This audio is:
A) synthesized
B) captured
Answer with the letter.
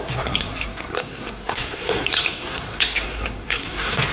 A